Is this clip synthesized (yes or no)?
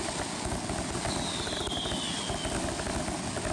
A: no